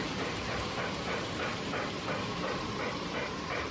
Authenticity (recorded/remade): remade